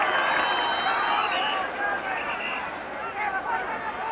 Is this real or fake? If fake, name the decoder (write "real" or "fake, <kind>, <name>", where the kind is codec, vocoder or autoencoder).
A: real